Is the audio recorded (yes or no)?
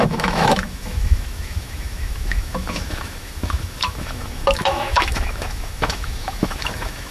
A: no